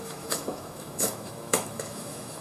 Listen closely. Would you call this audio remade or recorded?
remade